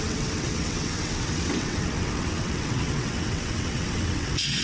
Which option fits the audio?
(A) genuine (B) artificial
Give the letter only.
B